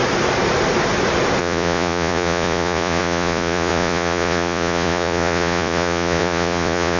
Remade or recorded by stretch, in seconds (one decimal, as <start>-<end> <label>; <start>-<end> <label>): 0.0-1.4 recorded; 1.4-7.0 remade